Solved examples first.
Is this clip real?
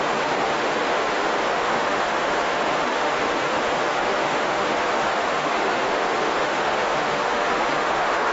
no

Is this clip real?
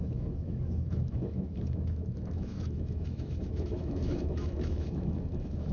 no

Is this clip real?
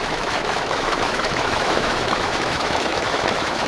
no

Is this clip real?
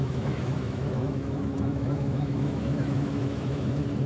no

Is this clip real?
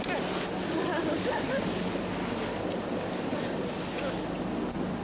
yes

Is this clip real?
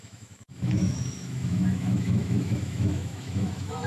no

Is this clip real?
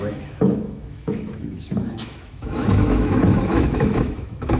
no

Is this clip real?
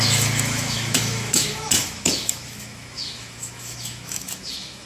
no